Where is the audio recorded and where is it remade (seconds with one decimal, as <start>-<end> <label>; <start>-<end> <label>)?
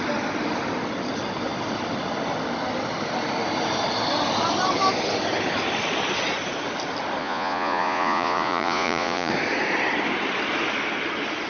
0.0-7.2 recorded; 7.2-9.3 remade; 9.3-11.5 recorded